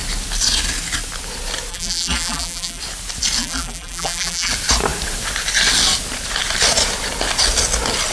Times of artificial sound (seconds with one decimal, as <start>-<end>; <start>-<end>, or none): 1.7-2.8; 3.4-4.5